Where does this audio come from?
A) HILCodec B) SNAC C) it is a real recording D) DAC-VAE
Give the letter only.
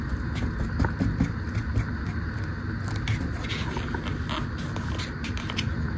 C